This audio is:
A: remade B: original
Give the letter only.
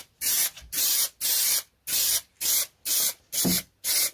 B